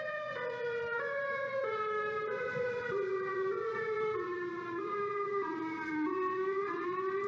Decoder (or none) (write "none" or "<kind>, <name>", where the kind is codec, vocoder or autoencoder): vocoder, Vocos